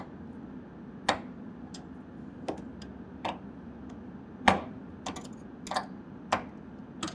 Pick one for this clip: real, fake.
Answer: real